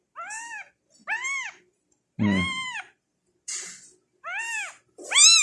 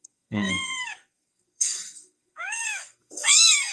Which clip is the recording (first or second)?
first